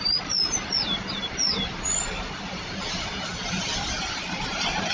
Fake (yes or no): no